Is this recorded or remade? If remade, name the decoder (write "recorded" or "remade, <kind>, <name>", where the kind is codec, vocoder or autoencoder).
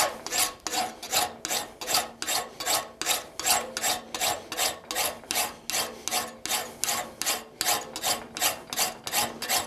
recorded